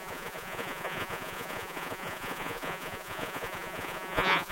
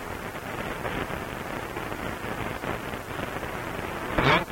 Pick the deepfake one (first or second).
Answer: first